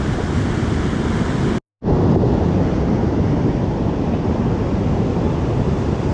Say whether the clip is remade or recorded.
recorded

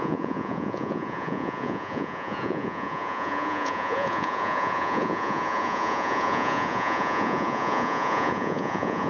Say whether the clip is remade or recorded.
remade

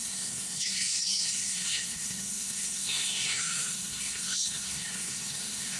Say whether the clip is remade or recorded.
remade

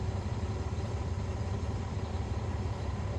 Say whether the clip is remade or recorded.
remade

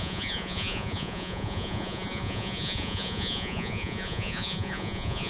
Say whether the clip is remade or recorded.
remade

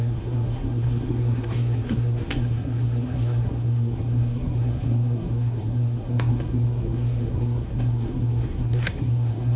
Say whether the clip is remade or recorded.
remade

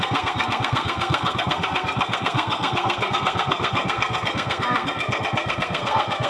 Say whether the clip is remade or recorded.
remade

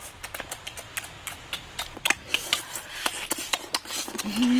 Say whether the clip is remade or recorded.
recorded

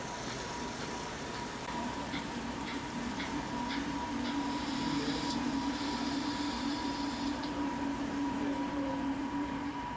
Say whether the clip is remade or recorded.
remade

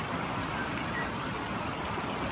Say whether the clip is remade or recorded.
recorded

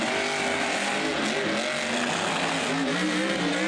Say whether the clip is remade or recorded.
recorded